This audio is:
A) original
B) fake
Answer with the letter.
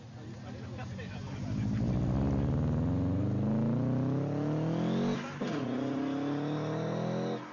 A